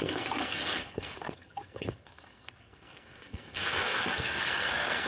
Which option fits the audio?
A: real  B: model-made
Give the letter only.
B